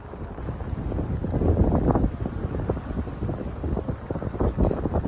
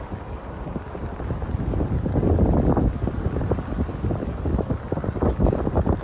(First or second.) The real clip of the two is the first